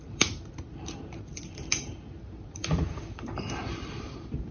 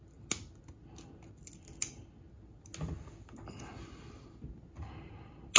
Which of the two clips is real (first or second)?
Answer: second